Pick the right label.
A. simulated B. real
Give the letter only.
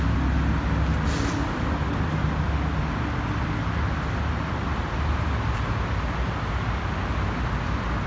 B